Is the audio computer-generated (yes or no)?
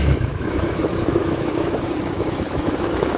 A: yes